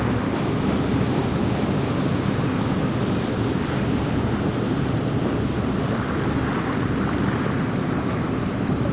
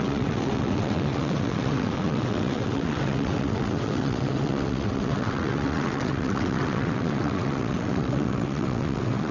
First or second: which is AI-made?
second